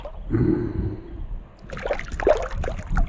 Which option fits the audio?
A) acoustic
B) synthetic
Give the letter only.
A